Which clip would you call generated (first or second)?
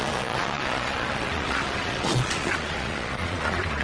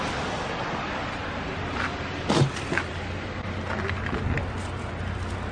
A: first